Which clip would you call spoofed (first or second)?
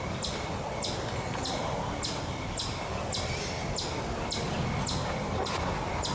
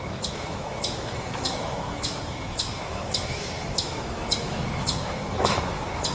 second